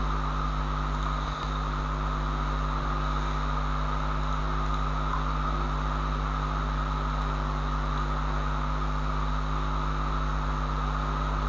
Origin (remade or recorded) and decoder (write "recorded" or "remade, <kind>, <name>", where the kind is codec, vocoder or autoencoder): recorded